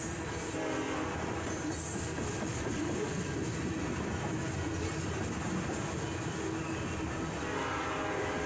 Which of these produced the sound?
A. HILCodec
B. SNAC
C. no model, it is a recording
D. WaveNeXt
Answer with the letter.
C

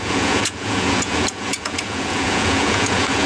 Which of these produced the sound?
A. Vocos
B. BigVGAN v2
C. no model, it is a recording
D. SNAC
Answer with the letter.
A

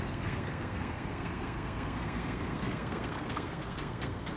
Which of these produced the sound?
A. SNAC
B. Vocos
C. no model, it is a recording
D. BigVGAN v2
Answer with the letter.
A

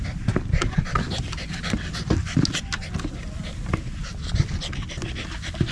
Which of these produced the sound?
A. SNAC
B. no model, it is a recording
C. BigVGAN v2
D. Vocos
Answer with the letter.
B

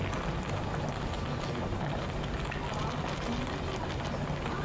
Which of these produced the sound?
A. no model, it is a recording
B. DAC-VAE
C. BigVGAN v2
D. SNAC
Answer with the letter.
A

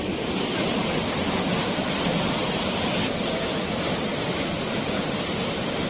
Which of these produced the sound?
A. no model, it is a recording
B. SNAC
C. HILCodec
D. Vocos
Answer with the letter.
A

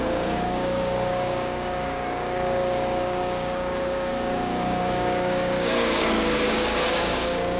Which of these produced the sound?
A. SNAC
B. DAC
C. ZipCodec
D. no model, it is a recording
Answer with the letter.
B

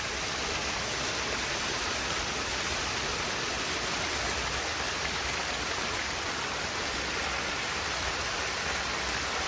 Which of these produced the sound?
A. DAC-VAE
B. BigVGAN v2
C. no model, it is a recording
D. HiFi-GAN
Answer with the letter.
C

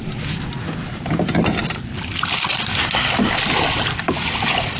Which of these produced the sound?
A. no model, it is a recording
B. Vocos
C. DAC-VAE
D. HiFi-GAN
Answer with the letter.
A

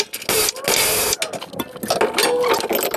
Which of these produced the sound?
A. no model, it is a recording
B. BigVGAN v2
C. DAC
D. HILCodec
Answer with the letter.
A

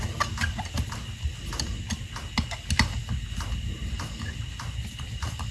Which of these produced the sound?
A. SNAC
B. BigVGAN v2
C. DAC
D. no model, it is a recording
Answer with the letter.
D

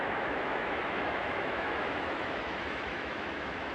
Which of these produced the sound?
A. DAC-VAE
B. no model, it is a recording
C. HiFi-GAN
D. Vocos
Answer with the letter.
A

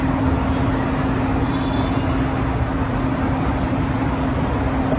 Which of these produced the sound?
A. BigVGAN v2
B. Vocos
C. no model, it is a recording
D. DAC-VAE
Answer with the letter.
C